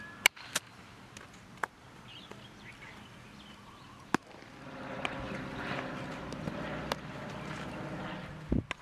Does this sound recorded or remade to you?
recorded